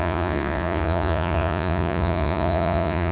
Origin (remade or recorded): remade